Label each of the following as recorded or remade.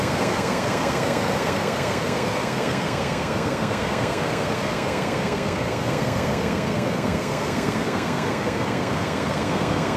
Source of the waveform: remade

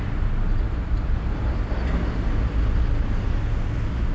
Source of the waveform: recorded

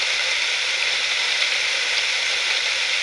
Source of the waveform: recorded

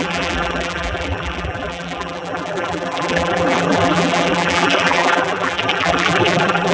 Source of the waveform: remade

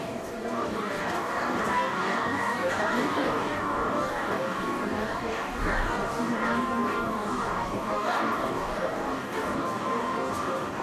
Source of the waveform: remade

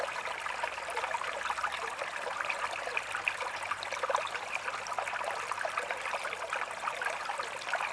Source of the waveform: recorded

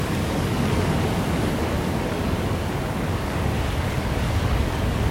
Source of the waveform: remade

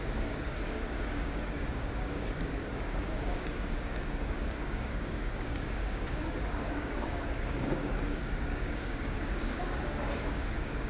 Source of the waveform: remade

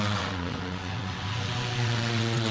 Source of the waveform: remade